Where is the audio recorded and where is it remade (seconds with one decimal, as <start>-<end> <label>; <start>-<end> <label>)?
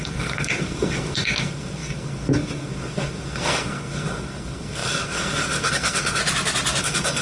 0.0-6.2 remade; 6.2-6.8 recorded; 6.8-7.2 remade